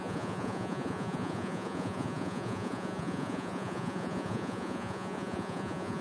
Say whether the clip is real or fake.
fake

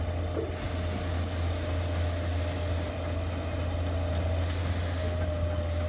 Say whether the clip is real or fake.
real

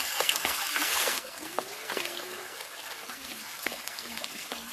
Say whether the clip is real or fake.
fake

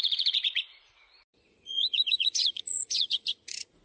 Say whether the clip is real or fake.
fake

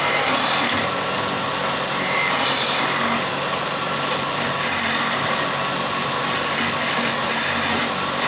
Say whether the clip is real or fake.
real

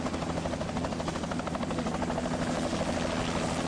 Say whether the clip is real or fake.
real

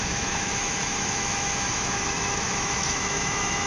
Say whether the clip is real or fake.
fake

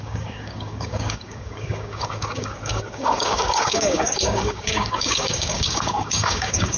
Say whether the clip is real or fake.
fake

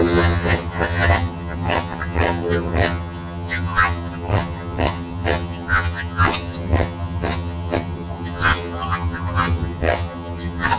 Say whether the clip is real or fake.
fake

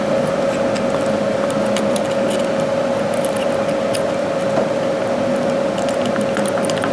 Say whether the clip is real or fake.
real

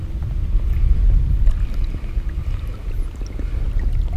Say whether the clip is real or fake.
real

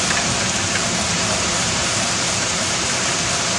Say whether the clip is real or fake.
fake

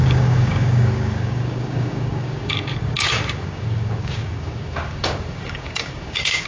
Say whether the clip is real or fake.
fake